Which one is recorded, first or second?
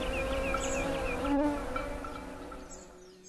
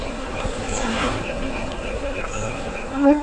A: first